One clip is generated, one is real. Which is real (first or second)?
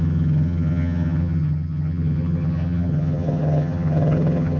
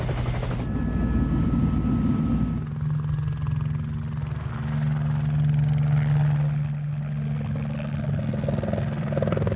second